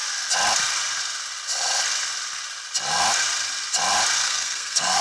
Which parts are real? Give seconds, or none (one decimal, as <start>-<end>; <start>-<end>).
0.0-4.2